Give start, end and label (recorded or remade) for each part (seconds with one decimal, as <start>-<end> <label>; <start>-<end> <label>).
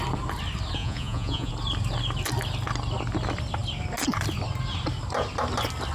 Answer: 0.0-0.8 recorded; 0.8-1.5 remade; 1.5-5.9 recorded